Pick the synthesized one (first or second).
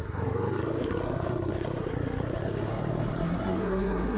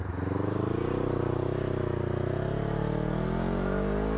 first